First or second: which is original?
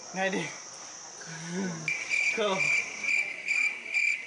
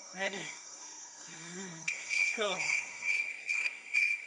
first